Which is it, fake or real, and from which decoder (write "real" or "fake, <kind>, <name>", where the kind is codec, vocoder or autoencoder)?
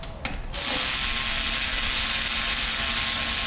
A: real